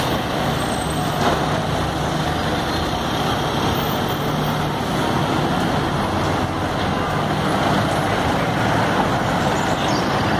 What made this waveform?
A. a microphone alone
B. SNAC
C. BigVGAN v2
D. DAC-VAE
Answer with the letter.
A